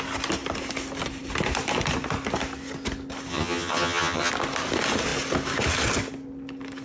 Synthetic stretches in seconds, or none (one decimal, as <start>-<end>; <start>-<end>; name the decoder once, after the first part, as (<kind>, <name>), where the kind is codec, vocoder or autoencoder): 3.3-4.3 (vocoder, HiFi-GAN)